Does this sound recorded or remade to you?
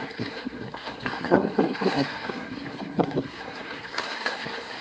remade